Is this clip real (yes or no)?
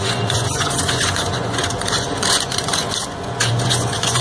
no